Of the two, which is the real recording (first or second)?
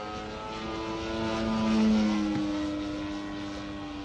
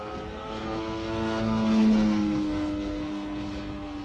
first